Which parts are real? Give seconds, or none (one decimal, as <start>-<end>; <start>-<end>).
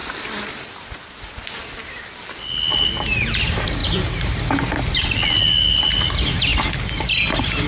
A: 0.0-3.8; 4.4-7.7